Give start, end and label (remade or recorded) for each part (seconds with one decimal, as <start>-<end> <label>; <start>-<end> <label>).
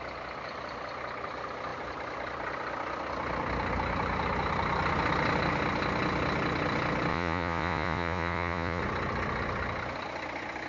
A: 0.0-7.1 recorded; 7.1-8.8 remade; 8.8-10.7 recorded